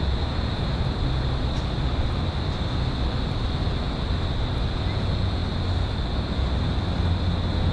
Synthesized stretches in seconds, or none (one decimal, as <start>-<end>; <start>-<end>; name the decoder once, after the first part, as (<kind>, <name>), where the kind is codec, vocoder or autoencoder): 0.0-0.7 (vocoder, Vocos); 4.7-5.4

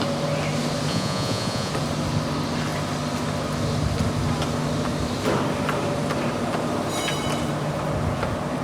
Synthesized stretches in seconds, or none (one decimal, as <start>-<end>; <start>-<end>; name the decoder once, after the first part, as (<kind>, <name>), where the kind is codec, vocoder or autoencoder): 0.9-1.7 (vocoder, Vocos)

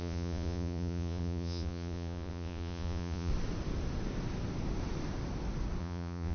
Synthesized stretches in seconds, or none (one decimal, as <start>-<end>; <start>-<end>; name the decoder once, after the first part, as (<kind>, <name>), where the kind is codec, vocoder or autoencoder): 0.0-3.3 (vocoder, Vocos); 5.8-6.3

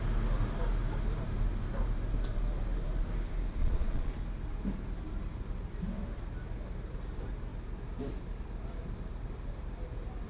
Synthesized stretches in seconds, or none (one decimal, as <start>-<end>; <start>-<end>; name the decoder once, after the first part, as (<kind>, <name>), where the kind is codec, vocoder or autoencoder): 3.6-4.1 (vocoder, Vocos)

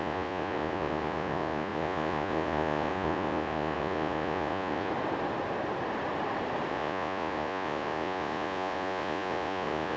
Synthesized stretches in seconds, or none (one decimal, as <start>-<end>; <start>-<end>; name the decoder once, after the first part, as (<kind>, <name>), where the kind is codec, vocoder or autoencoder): 0.0-4.9 (vocoder, Vocos); 6.7-10.0